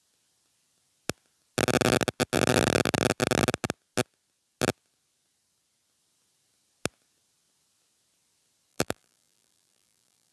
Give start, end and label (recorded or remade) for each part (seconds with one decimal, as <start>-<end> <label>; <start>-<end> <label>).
0.0-8.7 recorded; 8.7-10.3 remade